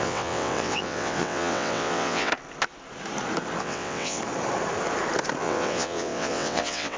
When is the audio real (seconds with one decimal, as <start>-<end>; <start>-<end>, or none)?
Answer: 2.3-3.6; 4.2-5.4